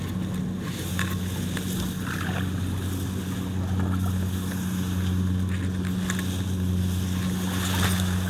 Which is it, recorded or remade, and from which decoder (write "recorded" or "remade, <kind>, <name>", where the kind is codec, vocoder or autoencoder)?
recorded